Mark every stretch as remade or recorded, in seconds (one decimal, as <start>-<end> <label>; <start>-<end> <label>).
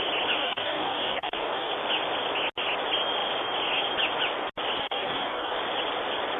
0.0-0.4 recorded; 0.4-1.7 remade; 1.7-4.8 recorded; 4.8-5.6 remade; 5.6-6.4 recorded